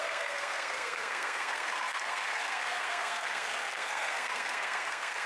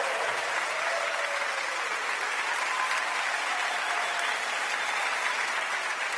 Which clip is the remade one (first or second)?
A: first